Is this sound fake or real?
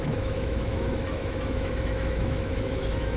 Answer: fake